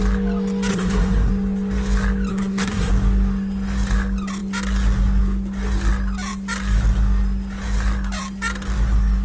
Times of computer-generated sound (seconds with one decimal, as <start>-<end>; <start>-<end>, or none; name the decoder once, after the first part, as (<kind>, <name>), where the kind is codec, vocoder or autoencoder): 0.7-1.3 (codec, SNAC); 2.3-2.9